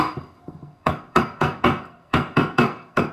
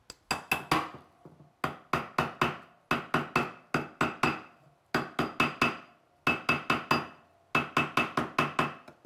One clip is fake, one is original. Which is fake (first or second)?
first